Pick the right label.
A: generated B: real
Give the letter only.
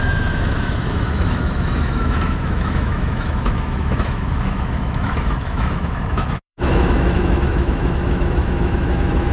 A